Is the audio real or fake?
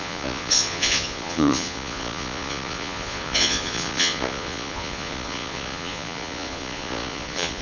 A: fake